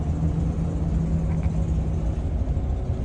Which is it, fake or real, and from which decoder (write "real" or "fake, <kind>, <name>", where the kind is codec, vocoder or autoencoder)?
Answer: real